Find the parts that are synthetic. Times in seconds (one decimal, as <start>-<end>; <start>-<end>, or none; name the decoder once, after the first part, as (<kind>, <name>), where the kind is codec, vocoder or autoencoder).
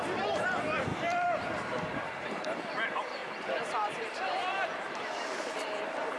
0.0-6.2 (vocoder, BigVGAN v2)